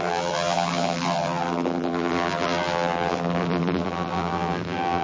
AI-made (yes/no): yes